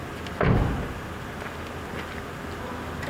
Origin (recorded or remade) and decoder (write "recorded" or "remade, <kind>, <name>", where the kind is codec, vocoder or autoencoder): recorded